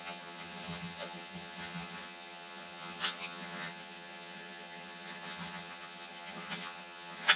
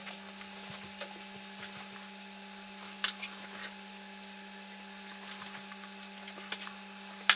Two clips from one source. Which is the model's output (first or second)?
first